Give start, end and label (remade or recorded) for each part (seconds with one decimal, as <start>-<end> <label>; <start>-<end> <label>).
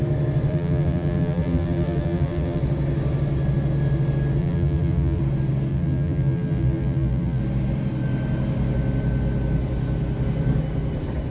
0.0-0.5 recorded; 0.5-2.6 remade; 2.6-4.4 recorded; 4.4-5.2 remade; 5.2-5.7 recorded; 5.7-7.4 remade; 7.4-11.3 recorded